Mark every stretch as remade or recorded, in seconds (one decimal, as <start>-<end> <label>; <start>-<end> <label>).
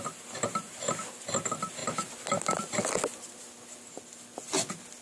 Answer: 0.0-5.0 recorded